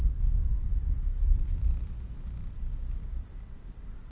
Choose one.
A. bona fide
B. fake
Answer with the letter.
A